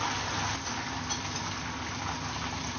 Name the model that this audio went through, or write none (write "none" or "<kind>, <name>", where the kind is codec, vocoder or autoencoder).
none